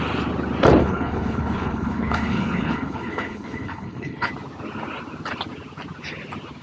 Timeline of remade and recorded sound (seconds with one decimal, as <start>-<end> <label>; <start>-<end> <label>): 0.0-0.8 recorded; 0.8-4.3 remade; 4.3-6.6 recorded